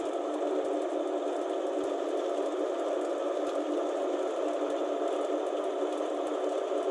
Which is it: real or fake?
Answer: real